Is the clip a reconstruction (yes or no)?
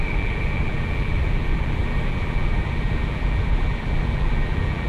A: yes